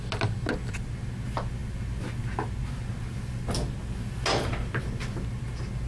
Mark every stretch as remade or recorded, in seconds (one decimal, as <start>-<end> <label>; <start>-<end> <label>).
0.0-5.9 recorded